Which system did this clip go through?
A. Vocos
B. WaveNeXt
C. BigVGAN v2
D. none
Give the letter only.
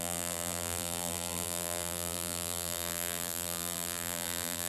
C